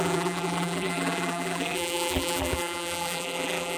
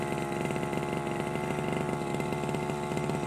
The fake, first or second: first